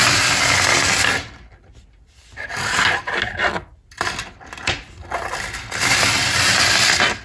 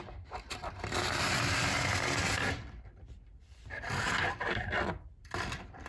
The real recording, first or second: first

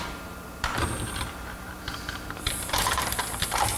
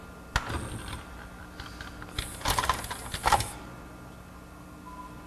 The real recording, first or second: second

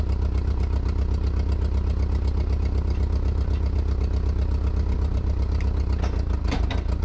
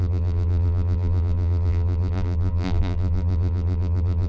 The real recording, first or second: first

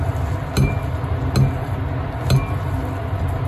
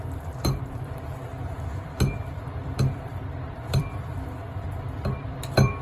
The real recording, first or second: first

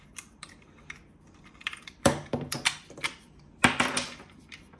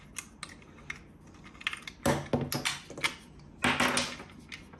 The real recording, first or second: second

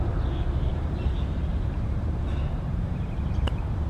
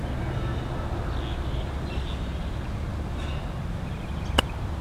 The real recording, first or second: second